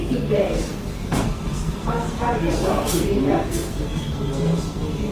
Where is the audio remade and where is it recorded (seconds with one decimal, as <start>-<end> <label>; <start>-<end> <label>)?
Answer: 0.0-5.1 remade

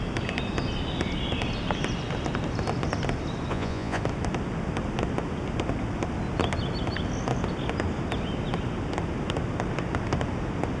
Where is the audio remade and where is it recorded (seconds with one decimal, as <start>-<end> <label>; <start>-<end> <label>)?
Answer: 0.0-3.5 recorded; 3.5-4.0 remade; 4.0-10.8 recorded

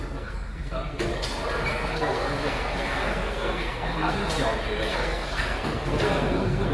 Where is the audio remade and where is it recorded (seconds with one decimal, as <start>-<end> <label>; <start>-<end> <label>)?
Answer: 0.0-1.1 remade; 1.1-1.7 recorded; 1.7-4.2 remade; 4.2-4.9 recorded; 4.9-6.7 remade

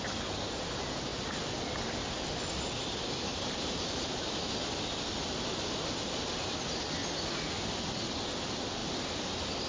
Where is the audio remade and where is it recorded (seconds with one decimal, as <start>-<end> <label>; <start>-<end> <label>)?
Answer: 0.0-9.7 recorded

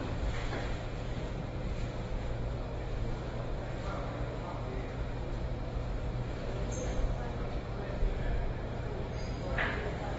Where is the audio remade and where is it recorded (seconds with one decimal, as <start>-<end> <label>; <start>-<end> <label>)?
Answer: 0.0-0.4 recorded; 0.4-2.5 remade; 2.5-10.2 recorded

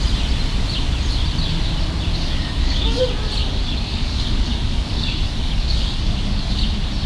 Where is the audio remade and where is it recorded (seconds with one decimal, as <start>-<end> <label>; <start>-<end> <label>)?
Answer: 0.0-2.1 recorded; 2.1-3.0 remade; 3.0-3.4 recorded; 3.4-6.6 remade; 6.6-7.1 recorded